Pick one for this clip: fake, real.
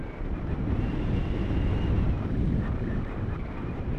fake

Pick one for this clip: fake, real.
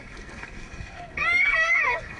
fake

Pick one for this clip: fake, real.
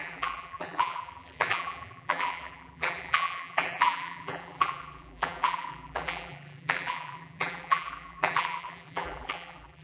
fake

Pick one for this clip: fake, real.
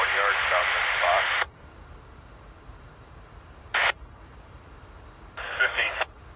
fake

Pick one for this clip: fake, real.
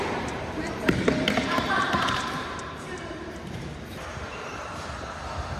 fake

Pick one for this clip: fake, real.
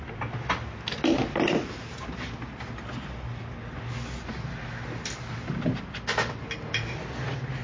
real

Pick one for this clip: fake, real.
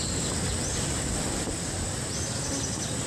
real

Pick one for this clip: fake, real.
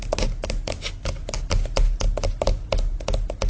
real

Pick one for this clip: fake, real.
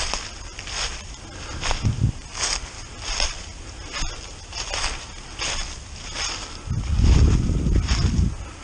real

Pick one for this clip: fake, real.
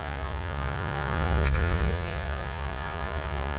fake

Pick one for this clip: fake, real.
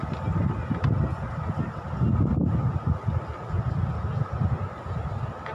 real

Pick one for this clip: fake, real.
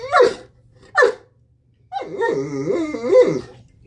real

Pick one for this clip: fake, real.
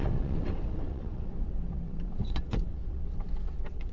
fake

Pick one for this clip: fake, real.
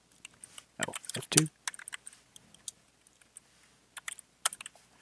real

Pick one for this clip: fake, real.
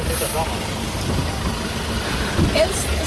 real